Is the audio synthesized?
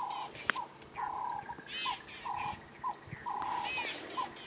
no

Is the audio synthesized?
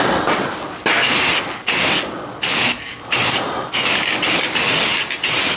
no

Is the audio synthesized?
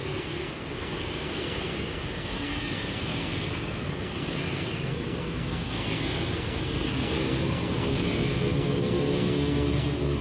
yes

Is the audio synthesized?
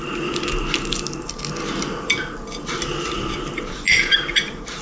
no